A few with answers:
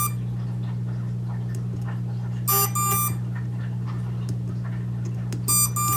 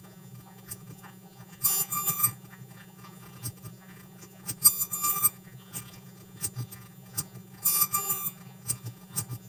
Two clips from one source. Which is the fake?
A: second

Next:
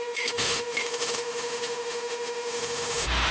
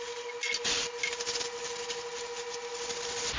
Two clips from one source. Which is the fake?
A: first